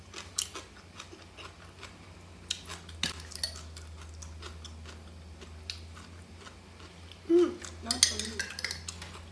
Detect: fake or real real